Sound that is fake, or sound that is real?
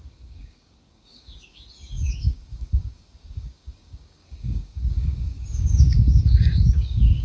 fake